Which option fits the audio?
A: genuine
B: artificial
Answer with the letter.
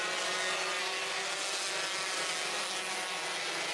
A